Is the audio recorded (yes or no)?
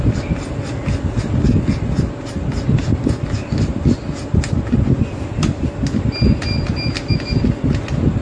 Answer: yes